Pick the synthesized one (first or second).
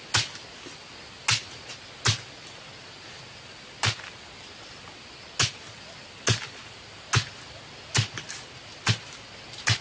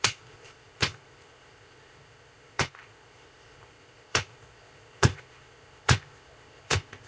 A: second